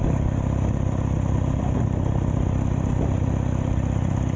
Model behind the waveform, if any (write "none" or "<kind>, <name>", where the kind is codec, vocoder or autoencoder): none